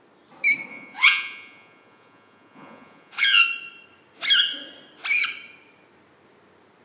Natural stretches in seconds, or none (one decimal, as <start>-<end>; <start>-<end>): 0.0-0.7; 3.4-6.8